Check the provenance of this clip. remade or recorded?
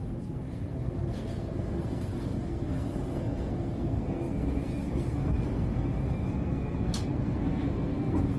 remade